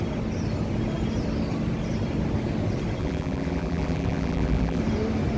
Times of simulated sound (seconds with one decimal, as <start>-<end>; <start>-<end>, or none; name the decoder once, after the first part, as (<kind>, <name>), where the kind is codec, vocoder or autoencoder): 3.0-4.8 (vocoder, BigVGAN v2)